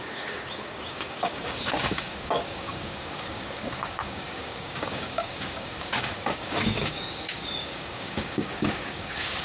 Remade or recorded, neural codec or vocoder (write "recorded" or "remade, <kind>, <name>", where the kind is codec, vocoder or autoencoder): remade, codec, DAC